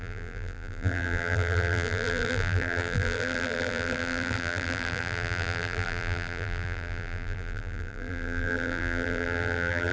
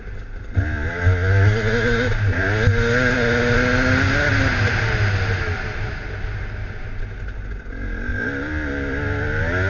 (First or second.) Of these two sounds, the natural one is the second